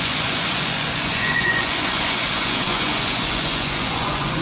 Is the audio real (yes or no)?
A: no